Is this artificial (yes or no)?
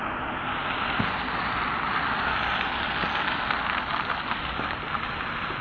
no